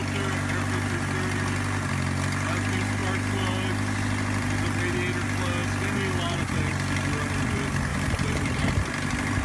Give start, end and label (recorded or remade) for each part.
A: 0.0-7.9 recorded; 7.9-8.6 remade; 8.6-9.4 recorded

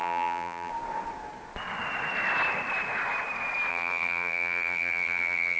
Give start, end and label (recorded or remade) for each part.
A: 0.0-0.7 remade; 0.7-3.7 recorded; 3.7-5.6 remade

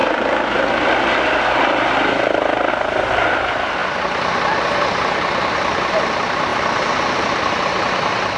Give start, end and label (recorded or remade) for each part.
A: 0.0-2.7 recorded; 2.7-3.8 remade; 3.8-5.9 recorded; 5.9-6.5 remade; 6.5-8.4 recorded